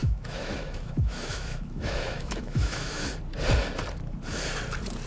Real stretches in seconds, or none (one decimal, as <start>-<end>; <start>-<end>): 3.1-5.1